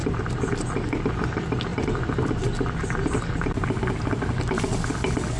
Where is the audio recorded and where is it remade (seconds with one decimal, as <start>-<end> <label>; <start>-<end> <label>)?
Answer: 0.0-1.7 recorded; 1.7-3.2 remade; 3.2-5.4 recorded